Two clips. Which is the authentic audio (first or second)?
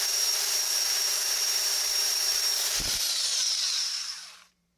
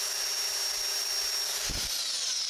second